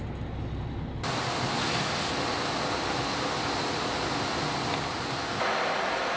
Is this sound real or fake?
real